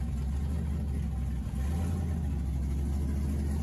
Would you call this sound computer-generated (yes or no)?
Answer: no